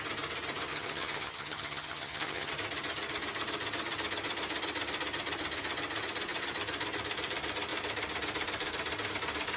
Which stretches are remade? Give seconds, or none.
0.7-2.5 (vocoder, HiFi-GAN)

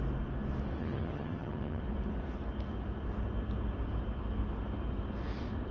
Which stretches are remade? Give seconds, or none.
0.8-1.8 (vocoder, HiFi-GAN)

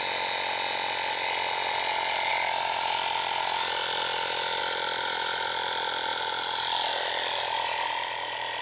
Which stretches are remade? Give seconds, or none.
none

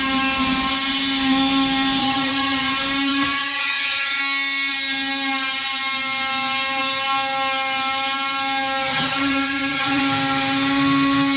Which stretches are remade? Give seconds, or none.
2.0-2.7 (vocoder, HiFi-GAN); 3.1-4.2; 8.9-10.0

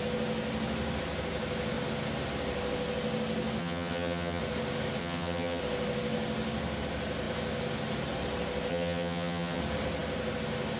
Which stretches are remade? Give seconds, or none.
3.6-4.4 (vocoder, HiFi-GAN); 5.0-5.6; 8.7-9.6

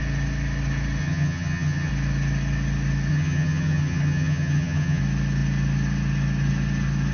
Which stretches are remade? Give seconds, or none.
1.0-1.9 (vocoder, HiFi-GAN); 3.1-5.0

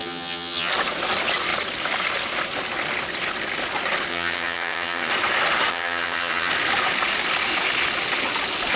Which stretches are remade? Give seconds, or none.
0.0-0.7 (vocoder, HiFi-GAN); 4.1-5.1; 5.7-6.5